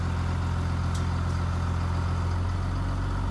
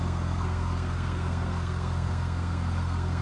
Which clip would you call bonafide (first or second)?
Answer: first